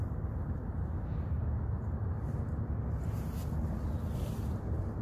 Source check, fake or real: real